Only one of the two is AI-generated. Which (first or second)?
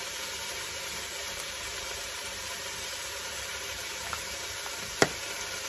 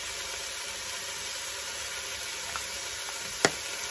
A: first